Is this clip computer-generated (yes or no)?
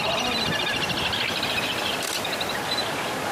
no